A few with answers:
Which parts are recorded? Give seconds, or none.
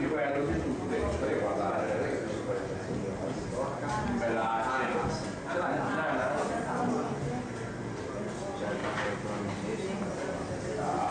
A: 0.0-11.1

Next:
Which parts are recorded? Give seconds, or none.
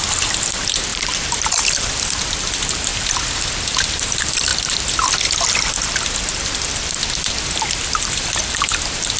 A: 2.9-4.0; 4.5-7.3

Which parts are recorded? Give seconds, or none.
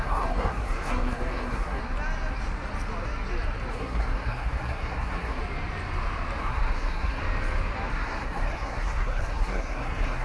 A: 1.8-3.7; 5.4-6.4; 7.2-7.9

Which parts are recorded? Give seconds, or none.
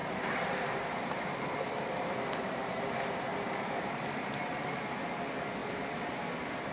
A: 2.8-3.3; 4.3-5.6; 6.1-6.7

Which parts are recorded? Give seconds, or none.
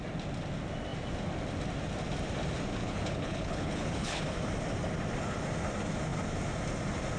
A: 0.0-2.8; 4.2-7.2